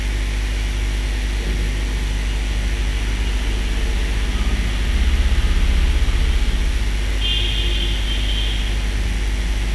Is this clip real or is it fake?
real